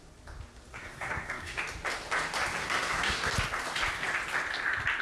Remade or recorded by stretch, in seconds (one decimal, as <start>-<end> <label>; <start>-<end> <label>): 0.0-0.7 recorded; 0.7-1.6 remade; 1.6-2.6 recorded; 2.6-3.3 remade; 3.3-5.0 recorded